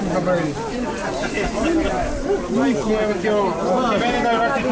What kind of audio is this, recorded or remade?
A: recorded